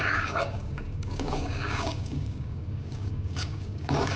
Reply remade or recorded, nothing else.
remade